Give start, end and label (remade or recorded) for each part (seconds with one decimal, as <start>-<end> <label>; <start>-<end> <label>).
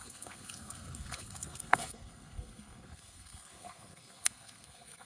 0.0-5.1 remade